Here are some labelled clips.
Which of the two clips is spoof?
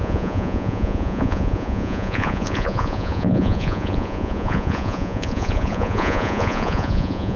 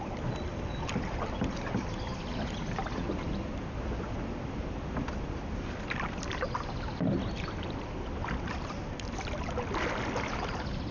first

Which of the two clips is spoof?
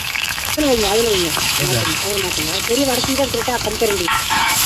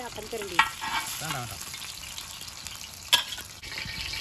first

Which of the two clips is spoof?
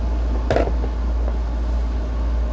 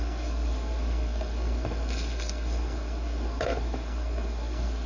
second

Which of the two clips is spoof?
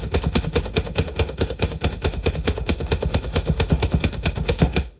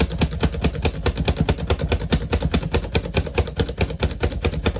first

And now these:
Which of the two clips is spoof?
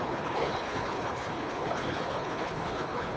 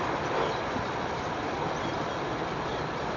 first